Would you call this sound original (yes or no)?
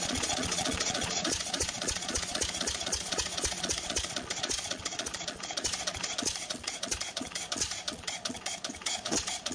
no